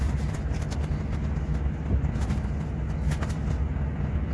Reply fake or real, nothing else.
real